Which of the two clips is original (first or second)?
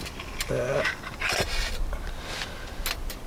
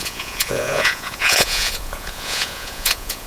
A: first